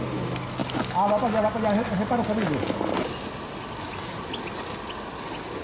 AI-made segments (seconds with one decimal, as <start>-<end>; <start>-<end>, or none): none